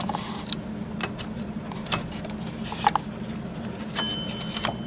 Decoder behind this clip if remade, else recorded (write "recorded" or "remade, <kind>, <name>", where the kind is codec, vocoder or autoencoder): recorded